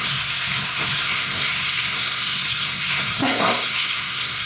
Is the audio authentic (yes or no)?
no